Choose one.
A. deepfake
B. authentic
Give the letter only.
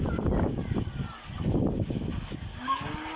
B